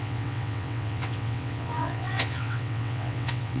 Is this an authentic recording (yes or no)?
no